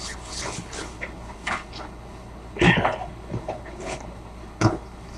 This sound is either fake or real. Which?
fake